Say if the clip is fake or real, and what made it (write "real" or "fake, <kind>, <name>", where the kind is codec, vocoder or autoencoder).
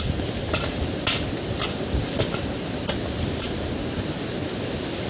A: real